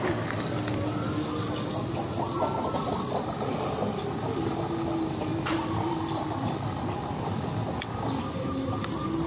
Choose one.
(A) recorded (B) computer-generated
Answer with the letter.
A